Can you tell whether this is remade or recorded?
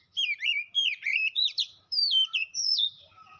remade